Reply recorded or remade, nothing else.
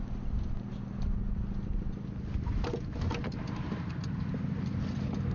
recorded